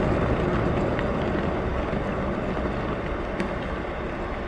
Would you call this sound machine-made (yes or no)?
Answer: no